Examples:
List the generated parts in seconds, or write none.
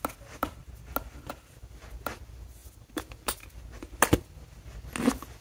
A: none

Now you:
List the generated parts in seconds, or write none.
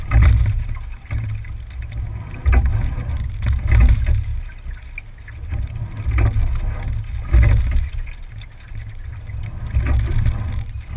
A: none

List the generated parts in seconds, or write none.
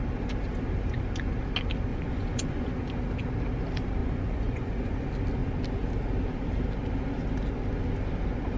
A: 1.9-2.7 (vocoder, Vocos); 4.0-5.0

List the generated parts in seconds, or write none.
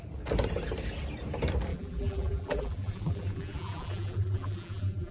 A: 1.7-5.1 (vocoder, BigVGAN v2)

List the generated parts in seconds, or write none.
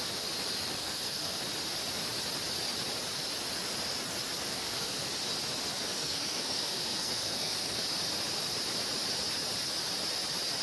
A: 0.8-1.4 (codec, SNAC); 4.5-5.1; 5.7-7.8